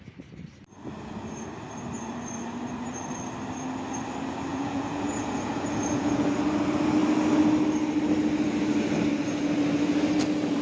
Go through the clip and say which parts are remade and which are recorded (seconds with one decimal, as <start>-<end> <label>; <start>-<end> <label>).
0.0-4.5 recorded; 4.5-6.2 remade; 6.2-10.6 recorded